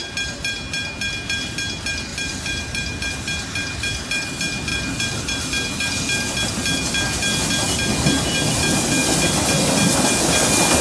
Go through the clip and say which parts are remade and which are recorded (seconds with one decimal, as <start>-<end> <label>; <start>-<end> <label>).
0.0-2.1 recorded; 2.1-3.1 remade; 3.1-4.7 recorded; 4.7-5.4 remade; 5.4-10.8 recorded